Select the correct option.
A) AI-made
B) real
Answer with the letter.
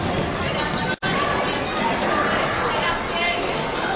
B